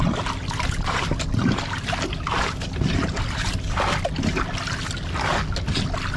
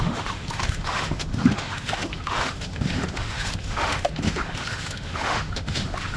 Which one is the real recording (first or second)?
first